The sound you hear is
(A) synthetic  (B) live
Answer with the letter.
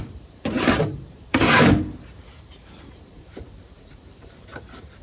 A